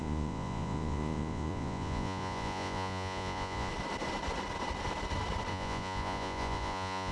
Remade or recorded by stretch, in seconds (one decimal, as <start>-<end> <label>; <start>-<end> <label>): 0.0-3.7 remade; 3.7-5.5 recorded; 5.5-7.1 remade

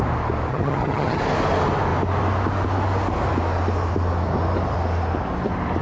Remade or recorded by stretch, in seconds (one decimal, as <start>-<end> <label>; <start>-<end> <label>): 0.0-0.5 recorded; 0.5-1.2 remade; 1.2-5.8 recorded